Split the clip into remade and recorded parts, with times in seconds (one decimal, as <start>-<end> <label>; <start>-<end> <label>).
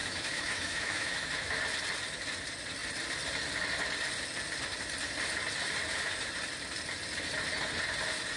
0.0-1.6 remade; 1.6-8.4 recorded